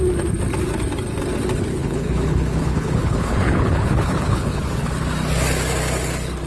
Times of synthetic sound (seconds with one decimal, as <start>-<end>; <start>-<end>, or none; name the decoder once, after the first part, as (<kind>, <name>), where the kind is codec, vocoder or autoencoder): 1.7-4.9 (codec, HILCodec)

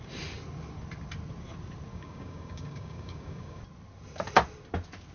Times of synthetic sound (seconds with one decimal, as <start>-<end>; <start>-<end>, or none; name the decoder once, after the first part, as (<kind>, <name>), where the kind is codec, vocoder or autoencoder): 1.9-3.6 (codec, DAC)

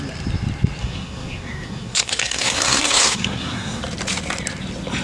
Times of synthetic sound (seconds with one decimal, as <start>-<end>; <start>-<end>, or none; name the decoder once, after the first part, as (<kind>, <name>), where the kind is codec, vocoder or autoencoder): 0.8-3.8 (codec, SNAC)

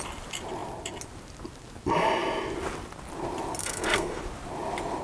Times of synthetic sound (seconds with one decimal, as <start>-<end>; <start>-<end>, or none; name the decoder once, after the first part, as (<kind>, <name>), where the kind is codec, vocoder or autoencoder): 3.6-4.2 (codec, SNAC)

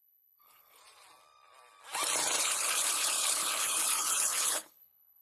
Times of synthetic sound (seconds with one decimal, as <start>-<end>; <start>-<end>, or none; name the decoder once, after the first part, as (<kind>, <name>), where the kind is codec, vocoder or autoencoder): 0.0-0.8 (codec, HILCodec); 2.4-5.2

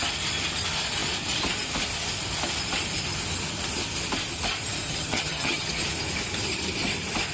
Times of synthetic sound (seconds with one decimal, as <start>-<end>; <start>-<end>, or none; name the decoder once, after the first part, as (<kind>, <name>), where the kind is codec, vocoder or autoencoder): 4.9-5.8 (vocoder, HiFi-GAN)

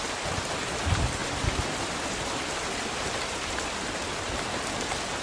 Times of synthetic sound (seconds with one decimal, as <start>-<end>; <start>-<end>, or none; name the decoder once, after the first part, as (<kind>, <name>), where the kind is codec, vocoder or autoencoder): 1.2-3.1 (vocoder, BigVGAN v2)

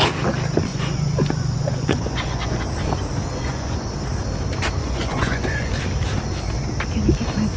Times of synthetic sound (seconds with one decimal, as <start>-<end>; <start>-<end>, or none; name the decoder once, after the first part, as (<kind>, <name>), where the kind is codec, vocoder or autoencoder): 0.7-2.6 (vocoder, Vocos); 3.3-3.9; 4.8-5.7